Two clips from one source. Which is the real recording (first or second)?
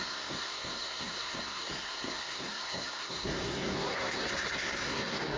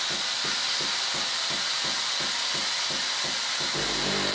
second